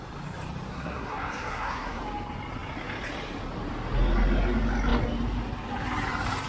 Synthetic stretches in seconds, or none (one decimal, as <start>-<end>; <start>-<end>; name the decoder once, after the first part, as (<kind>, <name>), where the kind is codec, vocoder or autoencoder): 0.7-2.0 (codec, SNAC)